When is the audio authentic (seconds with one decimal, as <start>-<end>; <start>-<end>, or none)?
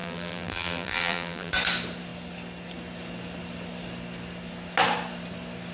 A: 1.5-5.7